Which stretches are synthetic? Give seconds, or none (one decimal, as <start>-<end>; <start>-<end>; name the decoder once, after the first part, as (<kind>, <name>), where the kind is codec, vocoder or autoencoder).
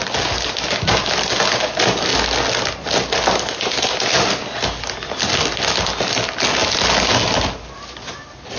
none